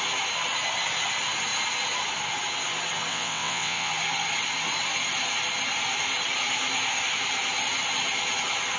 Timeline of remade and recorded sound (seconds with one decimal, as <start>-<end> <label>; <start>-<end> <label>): 0.0-3.1 recorded; 3.1-3.9 remade; 3.9-8.8 recorded